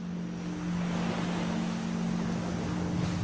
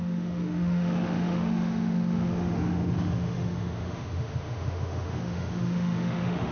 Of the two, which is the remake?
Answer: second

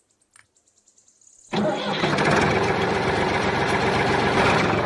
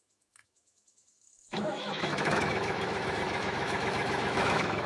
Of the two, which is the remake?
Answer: second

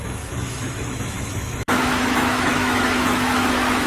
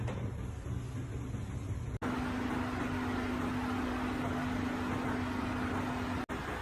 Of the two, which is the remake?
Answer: first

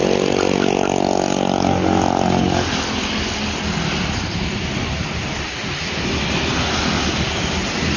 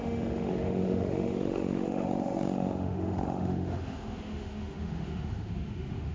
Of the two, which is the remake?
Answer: second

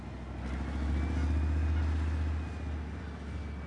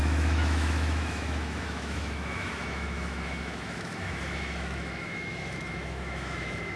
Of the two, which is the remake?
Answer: second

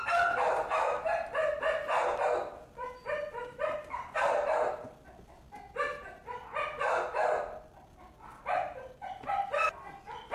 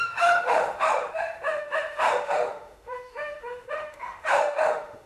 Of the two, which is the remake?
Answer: second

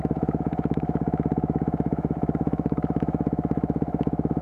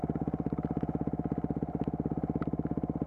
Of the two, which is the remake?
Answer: first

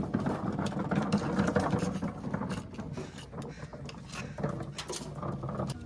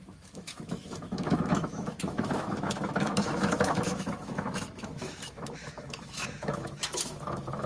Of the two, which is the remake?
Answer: second